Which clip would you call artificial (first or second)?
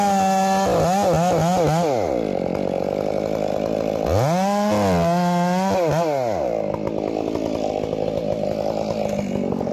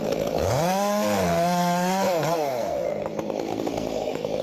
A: second